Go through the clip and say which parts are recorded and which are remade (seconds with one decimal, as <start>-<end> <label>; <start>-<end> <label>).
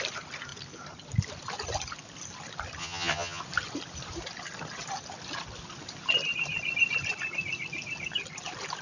0.0-2.8 recorded; 2.8-3.4 remade; 3.4-8.8 recorded